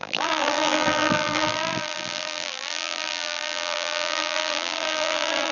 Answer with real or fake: fake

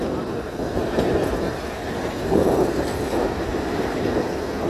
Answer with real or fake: real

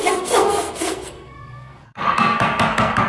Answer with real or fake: fake